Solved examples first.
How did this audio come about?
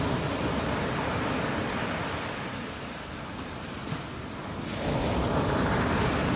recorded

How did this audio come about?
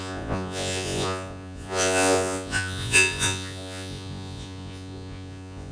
remade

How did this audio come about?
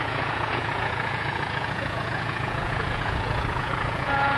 remade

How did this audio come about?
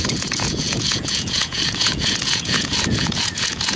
remade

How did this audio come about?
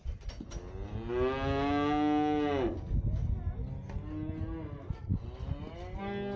recorded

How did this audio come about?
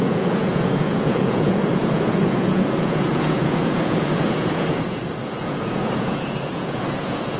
remade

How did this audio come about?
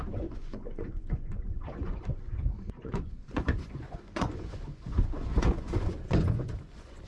remade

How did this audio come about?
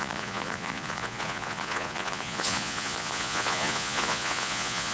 remade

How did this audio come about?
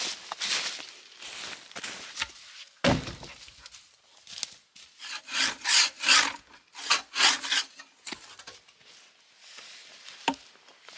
recorded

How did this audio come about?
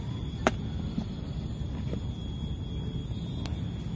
recorded